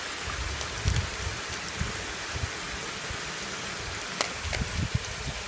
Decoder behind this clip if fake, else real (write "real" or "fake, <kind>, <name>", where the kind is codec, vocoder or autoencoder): real